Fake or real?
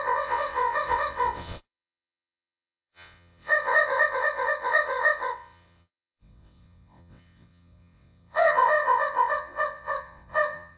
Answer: fake